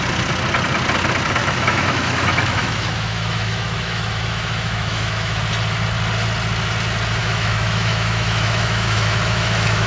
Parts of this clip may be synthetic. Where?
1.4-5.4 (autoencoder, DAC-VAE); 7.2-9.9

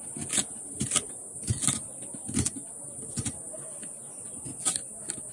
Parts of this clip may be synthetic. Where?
4.0-4.7 (vocoder, Vocos)

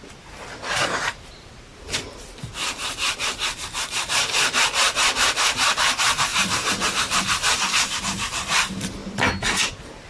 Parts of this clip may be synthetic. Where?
0.0-1.7 (vocoder, BigVGAN v2); 3.1-9.0; 9.7-10.1

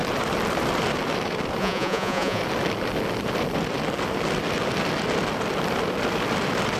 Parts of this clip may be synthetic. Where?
1.6-2.4 (vocoder, Vocos)

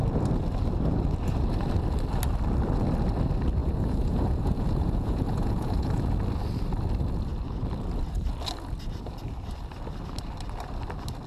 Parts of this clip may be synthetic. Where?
3.6-6.0 (vocoder, Vocos)